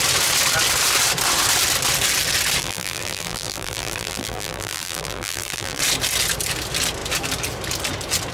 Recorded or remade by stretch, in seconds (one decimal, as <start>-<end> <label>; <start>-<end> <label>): 0.0-2.6 recorded; 2.6-5.8 remade; 5.8-8.3 recorded